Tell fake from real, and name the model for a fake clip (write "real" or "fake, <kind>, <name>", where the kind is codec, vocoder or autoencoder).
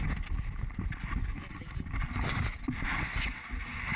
real